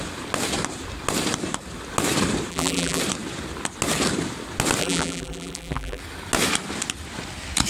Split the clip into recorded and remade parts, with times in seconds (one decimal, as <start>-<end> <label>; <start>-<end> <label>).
0.0-2.5 recorded; 2.5-3.0 remade; 3.0-4.8 recorded; 4.8-6.0 remade; 6.0-7.7 recorded